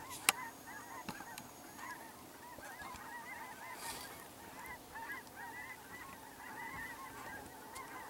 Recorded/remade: recorded